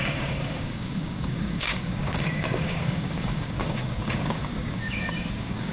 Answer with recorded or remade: remade